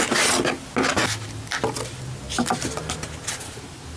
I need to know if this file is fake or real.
real